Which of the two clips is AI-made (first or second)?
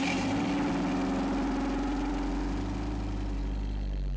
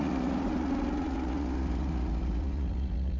second